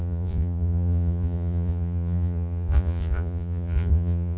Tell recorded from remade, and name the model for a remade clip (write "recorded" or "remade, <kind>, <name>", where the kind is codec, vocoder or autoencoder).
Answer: remade, vocoder, Vocos